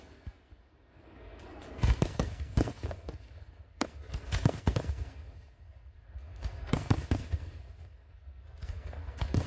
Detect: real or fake fake